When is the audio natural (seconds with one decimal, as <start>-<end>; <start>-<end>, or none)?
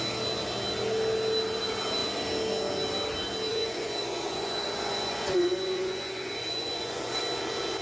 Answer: 0.0-3.5; 7.2-7.8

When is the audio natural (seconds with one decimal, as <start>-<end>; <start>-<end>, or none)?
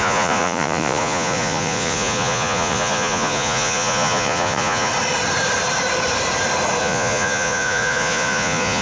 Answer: 4.9-6.8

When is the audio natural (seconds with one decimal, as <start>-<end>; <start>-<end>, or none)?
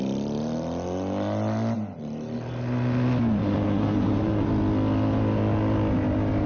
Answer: 0.0-3.4; 4.5-6.5